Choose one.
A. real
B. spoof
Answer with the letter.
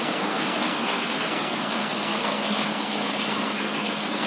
B